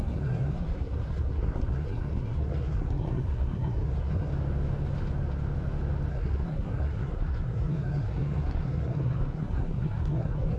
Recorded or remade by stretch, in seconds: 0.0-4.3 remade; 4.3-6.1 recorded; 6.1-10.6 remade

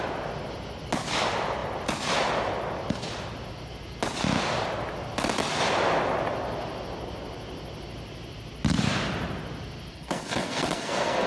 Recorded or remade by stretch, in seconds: 0.0-9.9 recorded; 9.9-11.3 remade

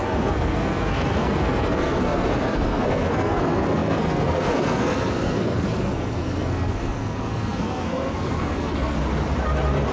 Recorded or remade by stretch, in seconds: 0.0-9.0 remade; 9.0-9.9 recorded

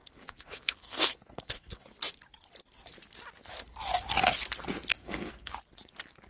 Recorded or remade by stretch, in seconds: 0.0-1.8 remade; 1.8-4.9 recorded; 4.9-5.5 remade; 5.5-6.3 recorded

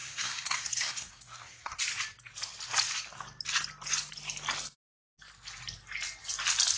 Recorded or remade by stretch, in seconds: 0.0-1.8 remade; 1.8-6.8 recorded